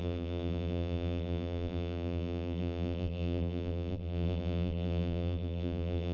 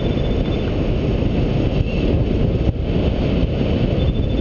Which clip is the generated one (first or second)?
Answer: first